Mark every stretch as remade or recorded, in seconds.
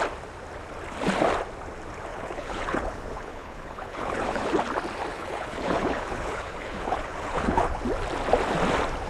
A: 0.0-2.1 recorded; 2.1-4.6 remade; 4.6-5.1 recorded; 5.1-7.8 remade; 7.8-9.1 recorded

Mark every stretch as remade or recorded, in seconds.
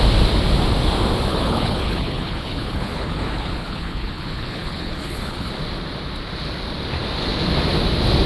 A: 0.0-1.3 recorded; 1.3-5.5 remade; 5.5-8.3 recorded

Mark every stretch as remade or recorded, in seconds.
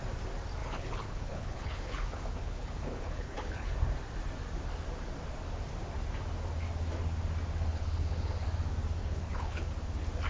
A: 0.0-0.6 recorded; 0.6-3.7 remade; 3.7-7.7 recorded; 7.7-8.3 remade; 8.3-9.0 recorded; 9.0-9.7 remade; 9.7-10.3 recorded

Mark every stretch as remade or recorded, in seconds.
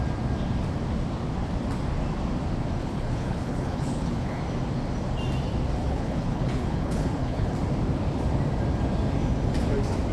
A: 0.0-2.8 recorded; 2.8-4.4 remade; 4.4-5.8 recorded; 5.8-7.5 remade; 7.5-10.1 recorded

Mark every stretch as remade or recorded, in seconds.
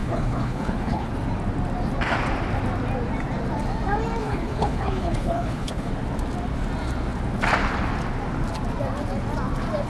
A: 0.0-1.1 remade; 1.1-4.2 recorded; 4.2-5.9 remade; 5.9-9.9 recorded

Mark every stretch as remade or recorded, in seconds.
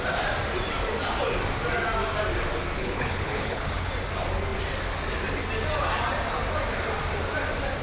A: 0.0-2.8 recorded; 2.8-3.9 remade; 3.9-7.8 recorded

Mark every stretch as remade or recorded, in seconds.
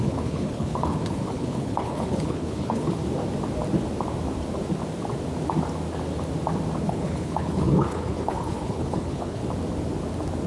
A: 0.0-3.0 remade; 3.0-6.8 recorded; 6.8-9.4 remade; 9.4-10.5 recorded